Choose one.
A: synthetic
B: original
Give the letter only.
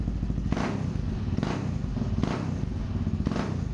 B